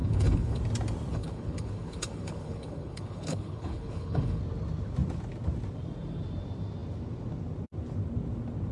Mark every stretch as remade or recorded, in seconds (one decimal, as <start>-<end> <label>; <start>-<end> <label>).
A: 0.0-0.6 remade; 0.6-1.1 recorded; 1.1-4.4 remade; 4.4-8.7 recorded